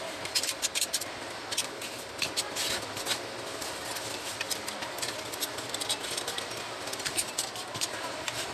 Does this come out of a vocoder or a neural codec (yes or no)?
no